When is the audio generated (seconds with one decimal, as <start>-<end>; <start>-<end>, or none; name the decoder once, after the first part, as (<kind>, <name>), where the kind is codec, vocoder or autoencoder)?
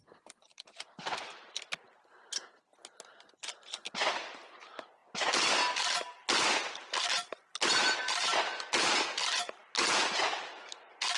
0.5-2.8 (vocoder, BigVGAN v2)